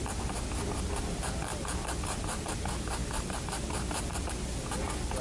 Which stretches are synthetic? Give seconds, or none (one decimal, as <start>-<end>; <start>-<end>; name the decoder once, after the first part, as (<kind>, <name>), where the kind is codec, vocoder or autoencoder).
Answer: 1.5-2.5 (vocoder, BigVGAN v2); 3.0-5.2